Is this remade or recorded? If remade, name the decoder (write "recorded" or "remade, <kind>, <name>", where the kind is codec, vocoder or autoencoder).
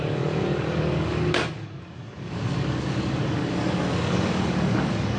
remade, codec, DAC